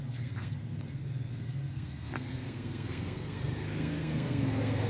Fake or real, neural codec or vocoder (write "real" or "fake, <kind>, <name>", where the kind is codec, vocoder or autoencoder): fake, codec, SNAC